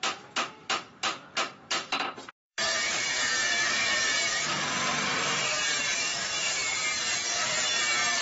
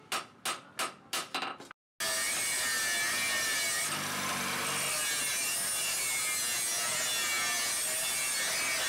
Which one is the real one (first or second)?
second